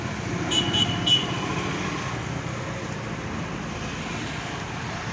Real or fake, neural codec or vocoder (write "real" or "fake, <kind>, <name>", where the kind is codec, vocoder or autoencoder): real